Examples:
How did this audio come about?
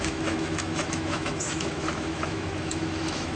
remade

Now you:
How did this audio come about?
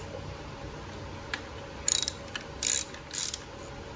recorded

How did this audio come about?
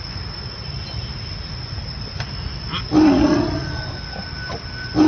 recorded